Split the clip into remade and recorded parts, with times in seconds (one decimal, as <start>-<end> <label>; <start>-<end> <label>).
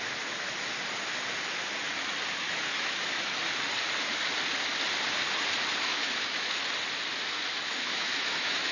0.0-2.4 recorded; 2.4-3.3 remade; 3.3-5.9 recorded; 5.9-6.6 remade; 6.6-7.6 recorded; 7.6-8.7 remade